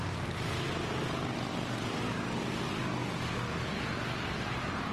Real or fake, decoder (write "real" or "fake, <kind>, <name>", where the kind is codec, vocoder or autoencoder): real